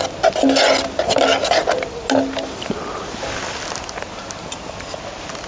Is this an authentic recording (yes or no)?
yes